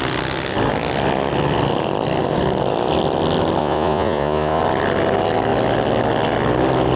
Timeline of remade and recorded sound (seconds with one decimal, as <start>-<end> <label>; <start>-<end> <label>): 0.0-3.6 recorded; 3.6-4.6 remade; 4.6-7.0 recorded